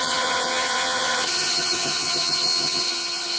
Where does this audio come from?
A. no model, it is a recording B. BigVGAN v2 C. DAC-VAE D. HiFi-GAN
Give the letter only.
D